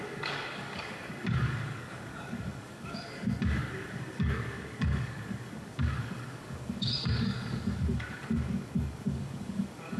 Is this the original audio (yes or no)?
no